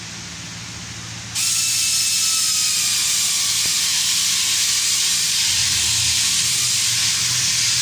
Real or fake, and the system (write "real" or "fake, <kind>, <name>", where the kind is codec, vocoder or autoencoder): real